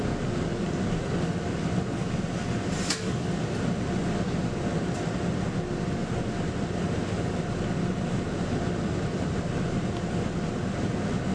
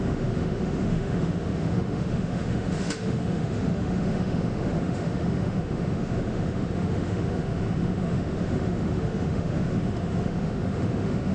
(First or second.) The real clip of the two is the first